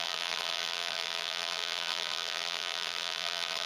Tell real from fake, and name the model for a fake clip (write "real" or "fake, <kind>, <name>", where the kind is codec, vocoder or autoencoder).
fake, vocoder, BigVGAN v2